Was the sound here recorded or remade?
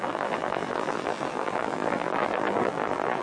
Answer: remade